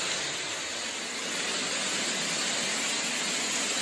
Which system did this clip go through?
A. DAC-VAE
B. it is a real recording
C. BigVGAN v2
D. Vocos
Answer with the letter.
B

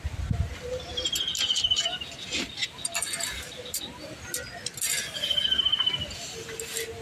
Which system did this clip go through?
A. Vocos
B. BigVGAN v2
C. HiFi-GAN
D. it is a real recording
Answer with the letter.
D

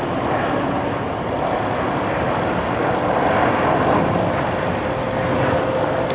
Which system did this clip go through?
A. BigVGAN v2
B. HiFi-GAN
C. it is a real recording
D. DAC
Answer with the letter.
C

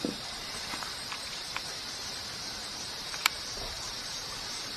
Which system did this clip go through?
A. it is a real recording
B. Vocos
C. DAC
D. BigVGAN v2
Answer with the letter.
D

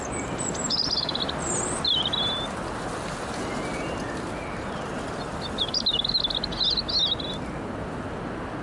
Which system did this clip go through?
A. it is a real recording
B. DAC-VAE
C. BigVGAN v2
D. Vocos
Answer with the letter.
A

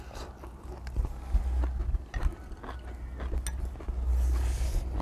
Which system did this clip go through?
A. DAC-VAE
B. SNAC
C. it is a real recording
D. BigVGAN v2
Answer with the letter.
C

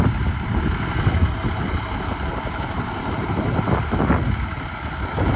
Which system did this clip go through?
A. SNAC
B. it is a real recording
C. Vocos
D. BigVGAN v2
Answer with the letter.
B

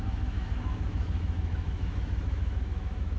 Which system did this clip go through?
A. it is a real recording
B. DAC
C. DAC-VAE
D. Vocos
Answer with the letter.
C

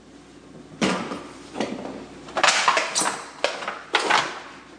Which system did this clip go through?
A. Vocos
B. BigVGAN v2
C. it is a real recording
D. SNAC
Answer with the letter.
C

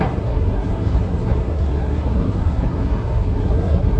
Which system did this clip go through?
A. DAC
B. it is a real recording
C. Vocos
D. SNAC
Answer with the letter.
D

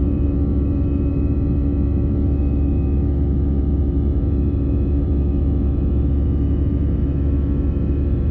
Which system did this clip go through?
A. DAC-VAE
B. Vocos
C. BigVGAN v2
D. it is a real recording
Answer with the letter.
A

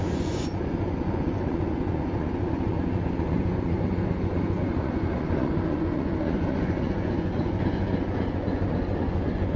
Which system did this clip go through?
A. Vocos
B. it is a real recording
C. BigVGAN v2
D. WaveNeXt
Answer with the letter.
A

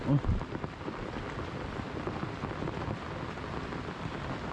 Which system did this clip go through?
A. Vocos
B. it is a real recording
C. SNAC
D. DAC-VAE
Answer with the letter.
B